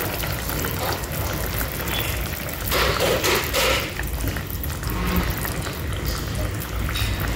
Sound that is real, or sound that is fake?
real